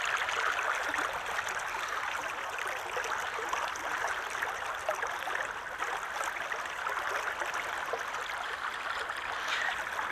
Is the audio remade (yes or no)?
no